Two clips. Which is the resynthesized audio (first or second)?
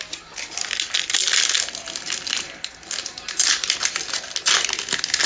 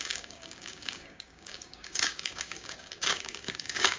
second